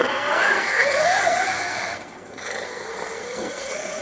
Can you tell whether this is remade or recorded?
remade